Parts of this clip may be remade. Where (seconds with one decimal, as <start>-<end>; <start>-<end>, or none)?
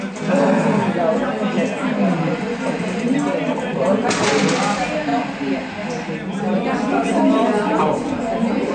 none